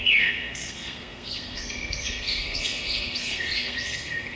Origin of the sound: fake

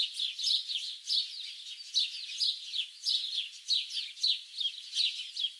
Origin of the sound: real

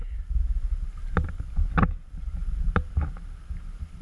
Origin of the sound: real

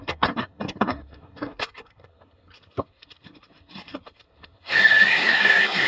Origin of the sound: fake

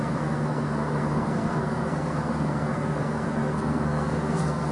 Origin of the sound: fake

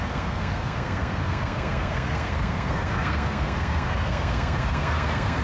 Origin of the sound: fake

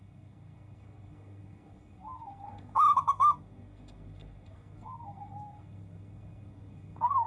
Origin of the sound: fake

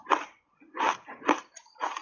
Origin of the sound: real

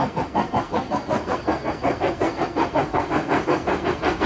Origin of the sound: fake